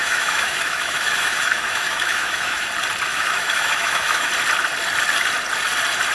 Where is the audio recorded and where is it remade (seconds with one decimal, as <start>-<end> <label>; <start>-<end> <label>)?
0.0-2.7 remade; 2.7-3.1 recorded; 3.1-4.3 remade; 4.3-6.1 recorded